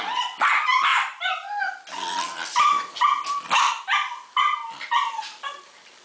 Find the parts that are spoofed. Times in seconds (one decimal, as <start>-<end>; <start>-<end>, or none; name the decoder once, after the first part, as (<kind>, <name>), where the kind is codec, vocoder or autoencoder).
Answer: none